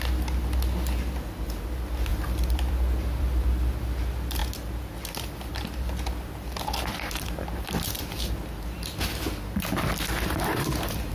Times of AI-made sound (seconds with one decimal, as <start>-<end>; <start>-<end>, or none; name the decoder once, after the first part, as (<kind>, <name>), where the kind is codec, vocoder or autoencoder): 2.1-3.5 (vocoder, BigVGAN v2); 6.9-8.1